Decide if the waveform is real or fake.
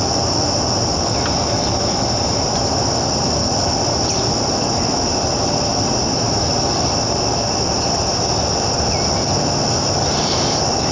real